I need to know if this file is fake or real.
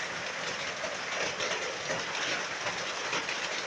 real